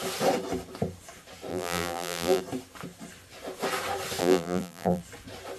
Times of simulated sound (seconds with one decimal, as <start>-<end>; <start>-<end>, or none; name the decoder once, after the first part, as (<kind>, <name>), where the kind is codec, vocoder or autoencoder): 1.5-2.4 (vocoder, BigVGAN v2); 4.2-5.0